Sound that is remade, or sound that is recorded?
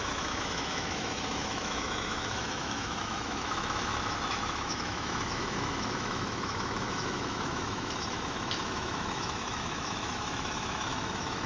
remade